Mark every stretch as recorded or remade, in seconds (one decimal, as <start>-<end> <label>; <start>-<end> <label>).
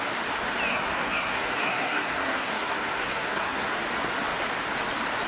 0.0-0.7 recorded; 0.7-3.7 remade; 3.7-5.3 recorded